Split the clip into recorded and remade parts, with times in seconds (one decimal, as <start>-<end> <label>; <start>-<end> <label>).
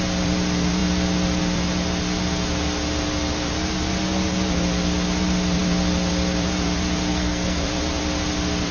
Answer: 0.0-7.1 recorded; 7.1-7.6 remade; 7.6-8.7 recorded